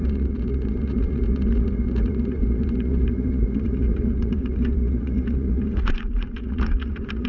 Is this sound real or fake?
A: fake